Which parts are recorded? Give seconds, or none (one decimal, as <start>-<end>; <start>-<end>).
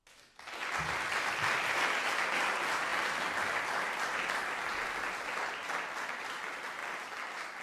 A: 0.0-7.6